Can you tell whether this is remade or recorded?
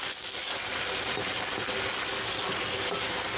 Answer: recorded